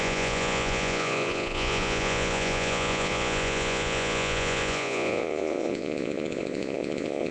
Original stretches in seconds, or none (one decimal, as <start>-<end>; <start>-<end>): none

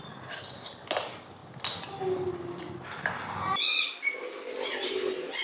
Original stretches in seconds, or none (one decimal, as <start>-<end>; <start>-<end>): 0.0-5.4